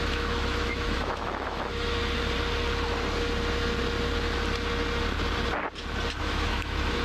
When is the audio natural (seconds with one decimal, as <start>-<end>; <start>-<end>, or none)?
2.0-6.2